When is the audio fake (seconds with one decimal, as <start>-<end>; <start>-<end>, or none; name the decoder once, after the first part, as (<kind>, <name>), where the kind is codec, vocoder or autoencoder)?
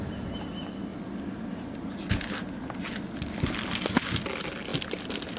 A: none